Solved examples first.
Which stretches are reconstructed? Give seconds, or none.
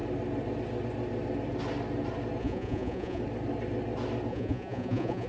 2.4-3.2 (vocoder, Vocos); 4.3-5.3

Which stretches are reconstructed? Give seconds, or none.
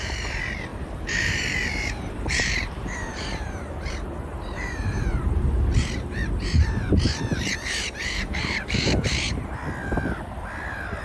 0.0-9.6 (vocoder, BigVGAN v2)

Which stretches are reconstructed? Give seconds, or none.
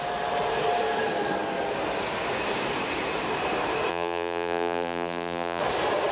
3.9-5.6 (vocoder, BigVGAN v2)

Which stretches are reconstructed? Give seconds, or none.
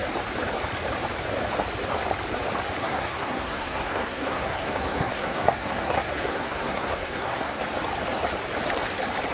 2.8-7.6 (codec, SNAC)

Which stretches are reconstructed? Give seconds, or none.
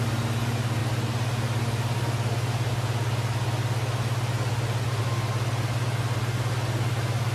none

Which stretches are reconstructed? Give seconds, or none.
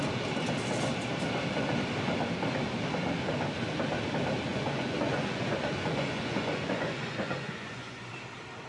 4.5-8.1 (vocoder, Vocos)